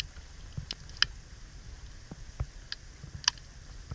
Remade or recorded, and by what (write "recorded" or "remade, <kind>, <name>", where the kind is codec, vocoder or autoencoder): recorded